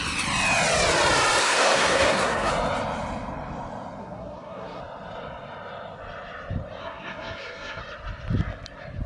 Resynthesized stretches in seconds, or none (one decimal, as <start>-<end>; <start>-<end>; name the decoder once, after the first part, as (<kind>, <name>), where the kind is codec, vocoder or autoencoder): 1.4-2.5 (codec, SNAC); 4.0-4.8; 6.8-7.8